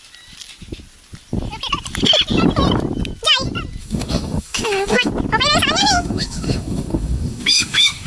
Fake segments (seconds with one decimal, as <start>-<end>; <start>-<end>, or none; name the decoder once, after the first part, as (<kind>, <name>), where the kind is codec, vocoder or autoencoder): 3.8-5.1 (autoencoder, DAC-VAE); 5.8-8.1